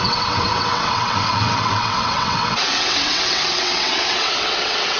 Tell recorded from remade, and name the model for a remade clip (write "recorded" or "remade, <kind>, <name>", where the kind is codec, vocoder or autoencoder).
remade, vocoder, WaveNeXt